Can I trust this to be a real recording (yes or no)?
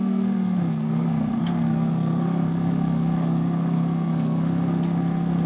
no